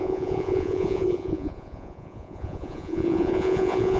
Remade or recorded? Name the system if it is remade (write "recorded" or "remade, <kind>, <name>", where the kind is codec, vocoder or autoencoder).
remade, vocoder, Vocos